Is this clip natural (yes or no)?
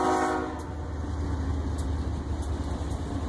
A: yes